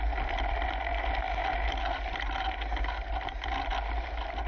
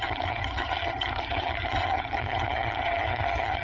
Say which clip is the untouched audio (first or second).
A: first